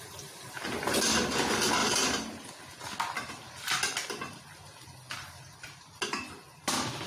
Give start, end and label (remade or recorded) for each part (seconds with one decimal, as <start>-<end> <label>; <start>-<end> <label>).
0.0-1.8 recorded; 1.8-2.5 remade; 2.5-7.1 recorded